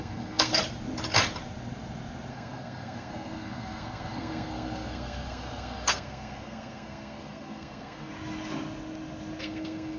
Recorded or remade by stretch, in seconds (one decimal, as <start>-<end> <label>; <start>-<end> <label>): 0.0-0.5 remade; 0.5-2.3 recorded; 2.3-8.1 remade; 8.1-9.4 recorded; 9.4-10.0 remade